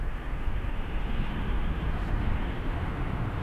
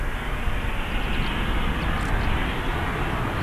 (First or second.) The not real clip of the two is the first